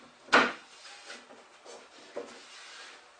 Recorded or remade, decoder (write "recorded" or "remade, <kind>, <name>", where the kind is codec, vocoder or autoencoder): recorded